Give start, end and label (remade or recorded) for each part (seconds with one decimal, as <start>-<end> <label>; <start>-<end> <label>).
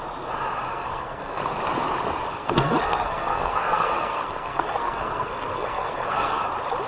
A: 0.0-0.7 recorded; 0.7-1.4 remade; 1.4-2.3 recorded; 2.3-6.4 remade; 6.4-6.9 recorded